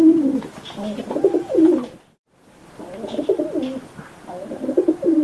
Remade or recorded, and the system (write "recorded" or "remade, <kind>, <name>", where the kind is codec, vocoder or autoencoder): recorded